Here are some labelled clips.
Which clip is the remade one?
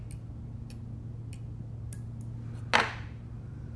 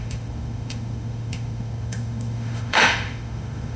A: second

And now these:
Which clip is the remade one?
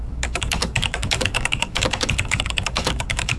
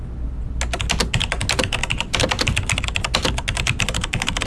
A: first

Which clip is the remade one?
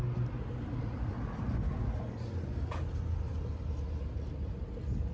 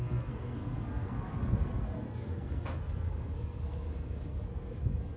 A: second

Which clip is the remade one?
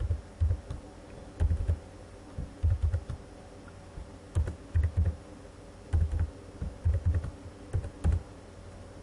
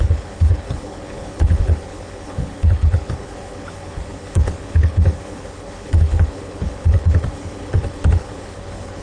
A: second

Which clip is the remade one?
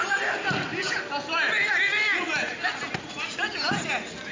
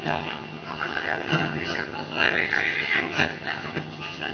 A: second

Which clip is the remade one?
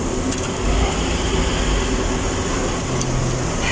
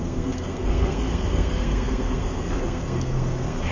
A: second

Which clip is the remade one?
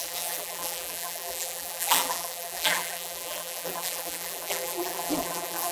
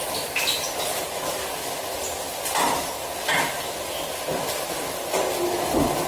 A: first